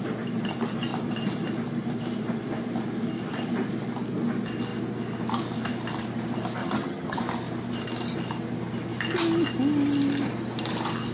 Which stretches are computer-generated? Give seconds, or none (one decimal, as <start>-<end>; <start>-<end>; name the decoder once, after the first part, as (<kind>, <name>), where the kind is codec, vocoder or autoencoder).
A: 6.6-7.2 (vocoder, HiFi-GAN)